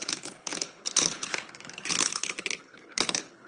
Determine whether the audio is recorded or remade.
remade